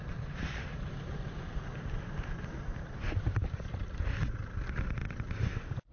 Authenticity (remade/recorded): recorded